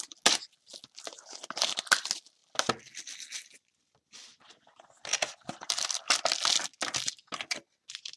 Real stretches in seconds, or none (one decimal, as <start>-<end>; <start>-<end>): 0.0-8.2